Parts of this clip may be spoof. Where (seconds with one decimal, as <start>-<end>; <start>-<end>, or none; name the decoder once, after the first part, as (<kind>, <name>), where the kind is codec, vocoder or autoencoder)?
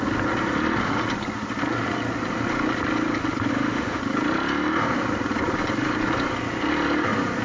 3.5-4.0 (autoencoder, DAC-VAE)